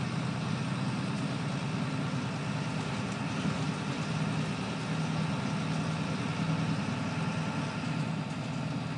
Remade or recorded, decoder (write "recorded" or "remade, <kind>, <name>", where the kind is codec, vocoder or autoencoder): recorded